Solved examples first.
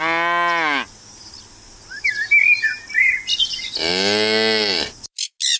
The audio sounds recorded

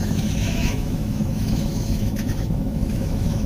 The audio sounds remade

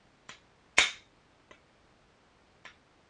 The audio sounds recorded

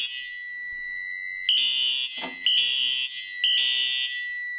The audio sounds recorded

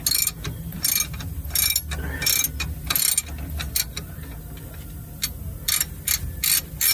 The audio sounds recorded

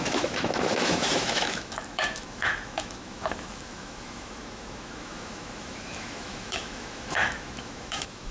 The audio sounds remade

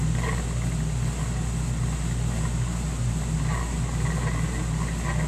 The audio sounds recorded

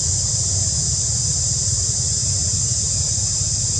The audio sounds recorded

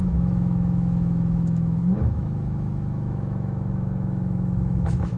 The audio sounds remade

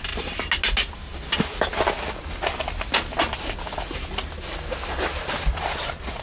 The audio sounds recorded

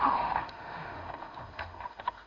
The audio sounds remade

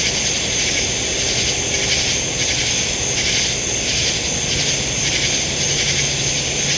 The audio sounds recorded